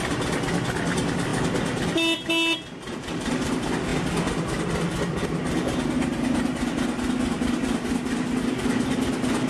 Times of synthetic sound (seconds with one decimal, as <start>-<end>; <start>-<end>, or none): none